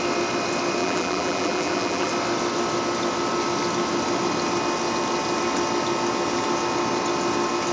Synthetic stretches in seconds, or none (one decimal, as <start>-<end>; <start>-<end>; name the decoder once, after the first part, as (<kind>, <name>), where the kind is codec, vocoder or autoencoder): 0.8-2.1 (vocoder, BigVGAN v2)

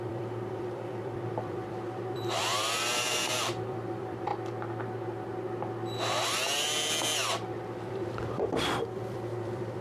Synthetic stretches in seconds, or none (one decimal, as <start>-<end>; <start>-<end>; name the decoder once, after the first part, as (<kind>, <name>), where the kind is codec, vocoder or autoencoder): 0.0-4.3 (vocoder, BigVGAN v2); 7.9-9.8

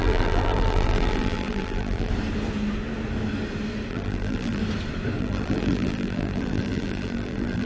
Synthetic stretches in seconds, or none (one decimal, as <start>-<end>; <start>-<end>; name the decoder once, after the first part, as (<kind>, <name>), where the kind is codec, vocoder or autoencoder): 0.0-2.1 (vocoder, BigVGAN v2); 3.9-4.6; 5.2-7.7